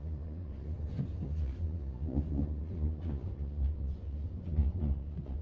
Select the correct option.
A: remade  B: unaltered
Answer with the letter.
A